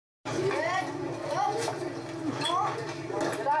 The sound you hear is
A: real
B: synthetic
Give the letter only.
A